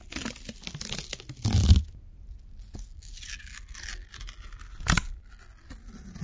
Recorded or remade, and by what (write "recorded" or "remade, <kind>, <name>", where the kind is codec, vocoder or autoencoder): recorded